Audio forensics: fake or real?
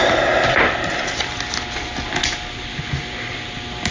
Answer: real